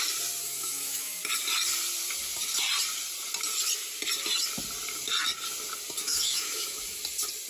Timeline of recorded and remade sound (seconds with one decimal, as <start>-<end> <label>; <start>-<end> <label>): 0.0-0.4 recorded; 0.4-1.2 remade; 1.2-6.0 recorded; 6.0-7.0 remade; 7.0-7.5 recorded